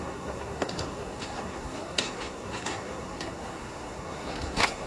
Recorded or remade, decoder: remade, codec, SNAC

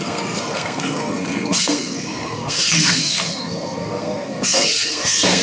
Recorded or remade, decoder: remade, codec, SNAC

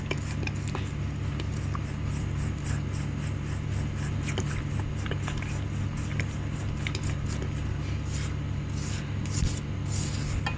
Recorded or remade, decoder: recorded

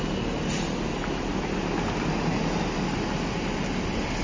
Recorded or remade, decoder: recorded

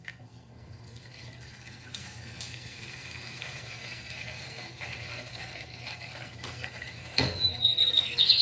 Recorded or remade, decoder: remade, codec, SNAC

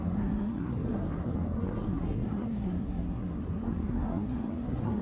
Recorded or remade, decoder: remade, codec, SNAC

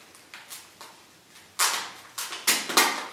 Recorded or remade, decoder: recorded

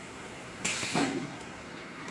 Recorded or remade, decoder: remade, codec, SNAC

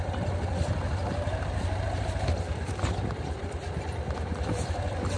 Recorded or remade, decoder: recorded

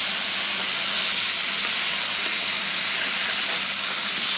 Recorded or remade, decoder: recorded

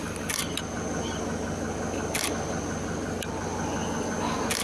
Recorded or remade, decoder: recorded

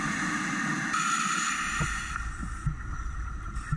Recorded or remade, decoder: recorded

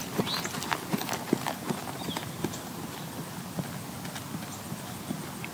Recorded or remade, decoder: recorded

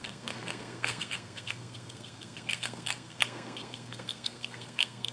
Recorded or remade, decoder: remade, codec, SNAC